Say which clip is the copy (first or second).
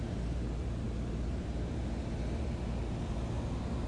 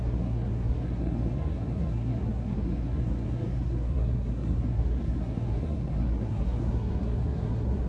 second